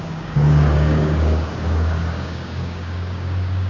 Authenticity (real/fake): fake